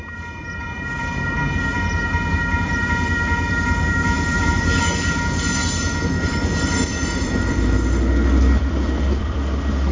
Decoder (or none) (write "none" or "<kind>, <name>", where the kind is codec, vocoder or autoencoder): vocoder, BigVGAN v2